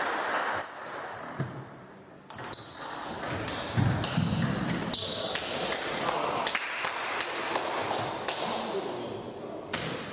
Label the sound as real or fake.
real